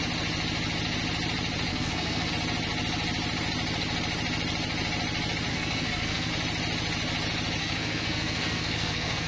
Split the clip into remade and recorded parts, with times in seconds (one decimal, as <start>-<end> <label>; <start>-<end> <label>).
0.0-1.7 recorded; 1.7-2.3 remade; 2.3-5.5 recorded; 5.5-6.3 remade; 6.3-7.6 recorded; 7.6-9.3 remade